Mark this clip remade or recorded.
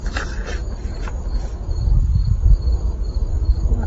recorded